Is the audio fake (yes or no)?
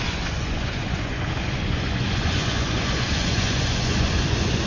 yes